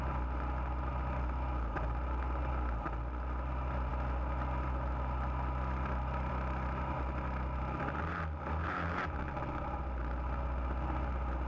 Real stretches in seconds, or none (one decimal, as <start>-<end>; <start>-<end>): 0.0-11.5